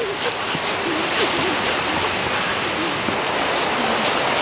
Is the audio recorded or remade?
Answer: recorded